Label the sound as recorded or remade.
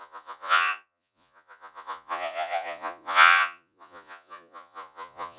remade